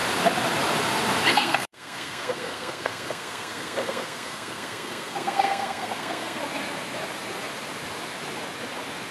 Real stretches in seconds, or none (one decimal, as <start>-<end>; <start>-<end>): 0.0-1.3; 6.4-9.1